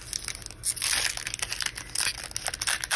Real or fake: real